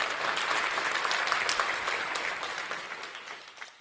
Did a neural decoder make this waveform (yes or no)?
no